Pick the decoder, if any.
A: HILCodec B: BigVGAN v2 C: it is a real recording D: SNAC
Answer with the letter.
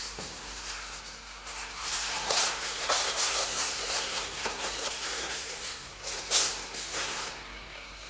D